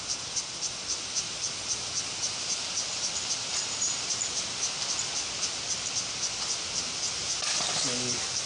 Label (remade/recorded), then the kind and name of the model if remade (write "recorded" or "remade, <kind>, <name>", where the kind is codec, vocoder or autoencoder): recorded